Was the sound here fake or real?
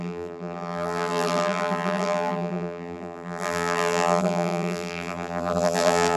fake